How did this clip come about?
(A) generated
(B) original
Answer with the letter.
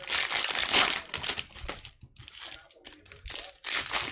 B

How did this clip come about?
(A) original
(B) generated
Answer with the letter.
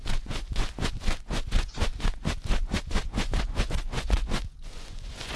B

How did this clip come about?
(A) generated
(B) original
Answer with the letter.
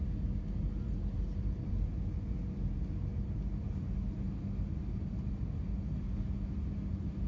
B